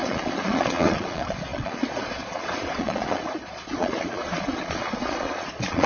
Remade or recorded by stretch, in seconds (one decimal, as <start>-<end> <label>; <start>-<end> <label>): 0.0-5.9 remade